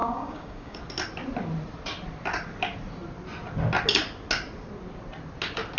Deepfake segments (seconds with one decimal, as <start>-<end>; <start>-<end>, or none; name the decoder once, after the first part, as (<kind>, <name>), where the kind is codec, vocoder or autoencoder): 0.0-0.8 (codec, DAC)